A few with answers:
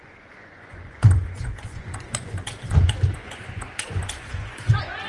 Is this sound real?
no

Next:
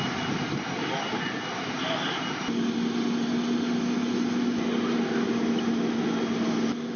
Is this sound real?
yes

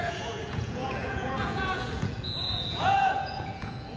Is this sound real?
no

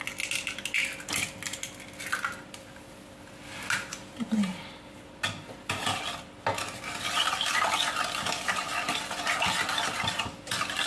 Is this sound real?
yes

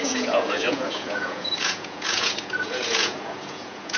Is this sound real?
no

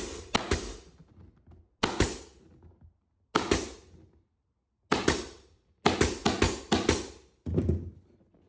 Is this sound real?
yes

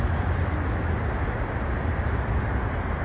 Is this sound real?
yes